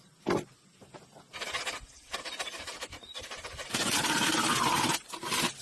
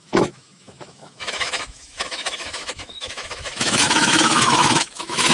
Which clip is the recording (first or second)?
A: first